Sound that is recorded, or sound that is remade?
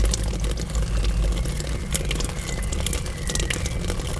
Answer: recorded